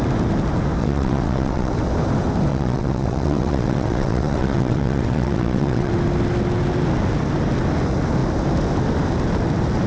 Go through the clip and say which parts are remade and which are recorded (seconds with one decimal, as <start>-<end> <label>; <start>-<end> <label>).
0.0-0.8 recorded; 0.8-1.7 remade; 1.7-2.5 recorded; 2.5-5.9 remade; 5.9-9.9 recorded